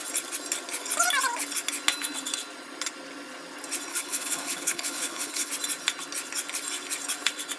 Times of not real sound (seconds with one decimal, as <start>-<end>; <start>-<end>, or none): 3.9-5.5